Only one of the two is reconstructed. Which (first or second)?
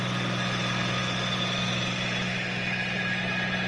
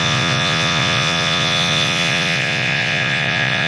second